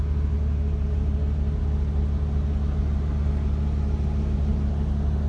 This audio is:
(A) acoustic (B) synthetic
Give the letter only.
A